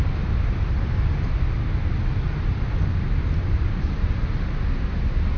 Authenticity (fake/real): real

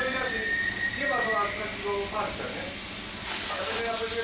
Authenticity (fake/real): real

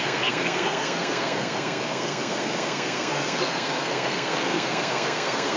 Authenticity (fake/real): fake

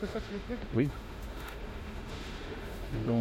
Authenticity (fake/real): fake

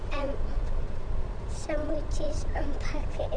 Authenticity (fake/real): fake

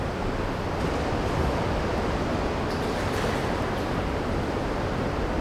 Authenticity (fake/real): real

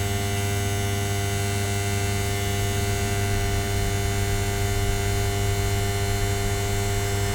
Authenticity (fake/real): real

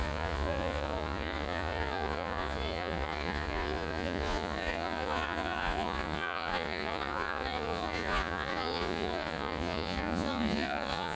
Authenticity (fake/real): fake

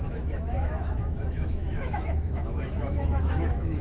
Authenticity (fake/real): fake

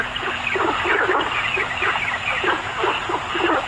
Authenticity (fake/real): fake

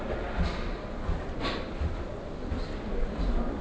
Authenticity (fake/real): real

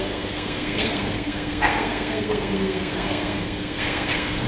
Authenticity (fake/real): fake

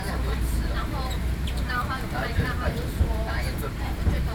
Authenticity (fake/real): fake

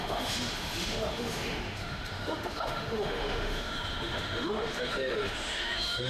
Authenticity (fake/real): fake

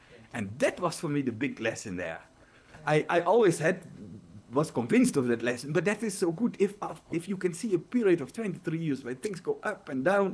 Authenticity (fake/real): fake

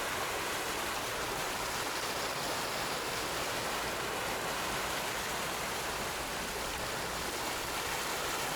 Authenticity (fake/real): real